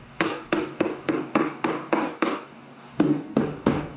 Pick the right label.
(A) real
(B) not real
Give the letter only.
B